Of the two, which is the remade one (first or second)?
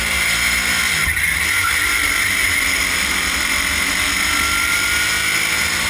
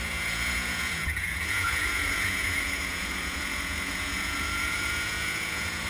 second